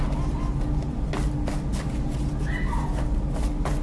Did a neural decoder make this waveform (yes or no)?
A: no